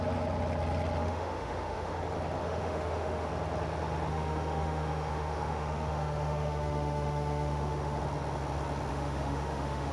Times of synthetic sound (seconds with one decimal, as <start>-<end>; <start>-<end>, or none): 1.0-2.0; 2.4-3.3; 4.1-8.0; 8.9-9.9